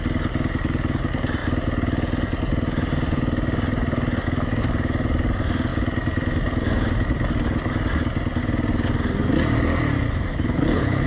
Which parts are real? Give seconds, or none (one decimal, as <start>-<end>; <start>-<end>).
0.0-10.3